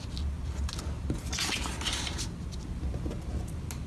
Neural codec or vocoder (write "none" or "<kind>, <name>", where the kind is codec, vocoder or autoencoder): none